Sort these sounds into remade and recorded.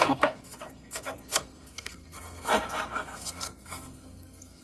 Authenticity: remade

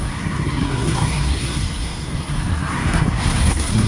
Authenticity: remade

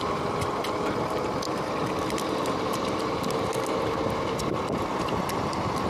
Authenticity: recorded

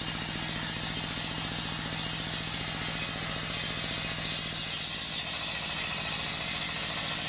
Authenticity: recorded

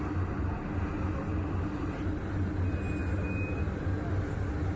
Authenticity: recorded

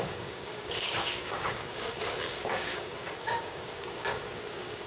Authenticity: remade